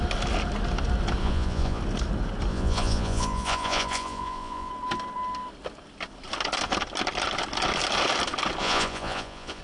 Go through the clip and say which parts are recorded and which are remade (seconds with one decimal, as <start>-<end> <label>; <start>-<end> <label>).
0.0-1.2 recorded; 1.2-1.8 remade; 1.8-2.5 recorded; 2.5-4.7 remade; 4.7-8.6 recorded; 8.6-9.6 remade